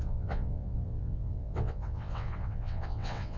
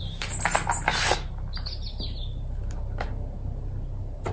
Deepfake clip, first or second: first